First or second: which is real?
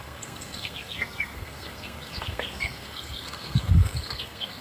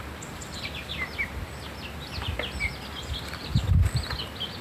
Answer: second